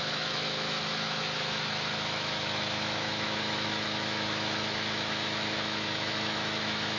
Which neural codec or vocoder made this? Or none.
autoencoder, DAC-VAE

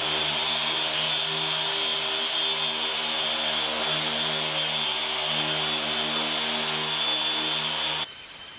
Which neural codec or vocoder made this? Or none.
none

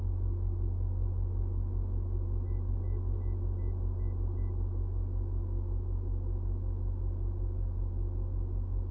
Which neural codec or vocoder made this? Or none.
none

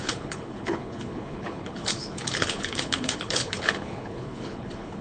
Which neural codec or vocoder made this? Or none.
codec, HILCodec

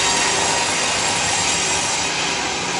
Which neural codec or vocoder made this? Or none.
none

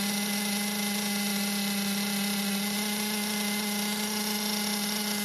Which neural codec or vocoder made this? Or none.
none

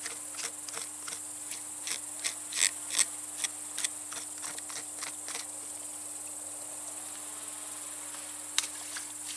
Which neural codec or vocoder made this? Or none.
none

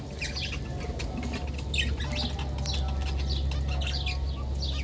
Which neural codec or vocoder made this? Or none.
none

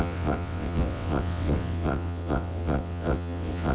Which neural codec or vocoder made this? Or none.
vocoder, WaveNeXt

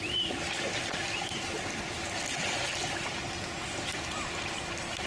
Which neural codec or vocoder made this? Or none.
vocoder, BigVGAN v2